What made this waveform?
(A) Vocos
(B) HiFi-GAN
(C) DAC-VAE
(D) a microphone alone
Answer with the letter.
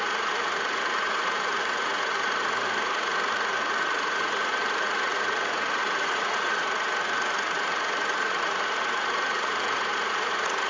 A